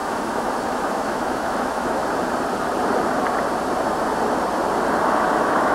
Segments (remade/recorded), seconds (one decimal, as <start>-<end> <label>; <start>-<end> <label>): 0.0-2.0 remade; 2.0-5.3 recorded; 5.3-5.7 remade